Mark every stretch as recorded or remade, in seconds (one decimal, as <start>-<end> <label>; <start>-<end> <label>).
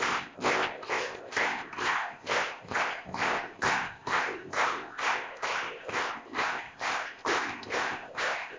0.0-8.6 remade